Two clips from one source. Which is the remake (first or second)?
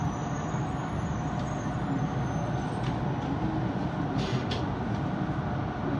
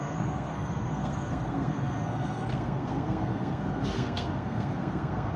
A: second